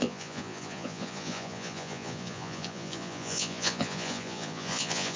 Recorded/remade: remade